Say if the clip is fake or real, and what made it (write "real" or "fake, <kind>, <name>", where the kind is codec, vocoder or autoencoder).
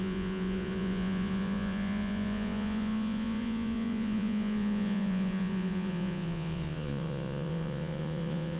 fake, vocoder, Vocos